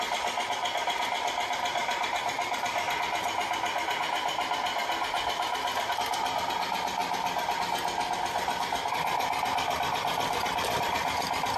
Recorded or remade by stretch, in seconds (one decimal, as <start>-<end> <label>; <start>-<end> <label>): 0.0-1.8 recorded; 1.8-2.6 remade; 2.6-11.6 recorded